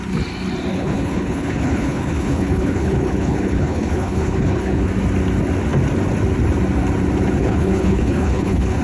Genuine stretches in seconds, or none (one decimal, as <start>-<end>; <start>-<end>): 0.0-0.7; 4.9-7.4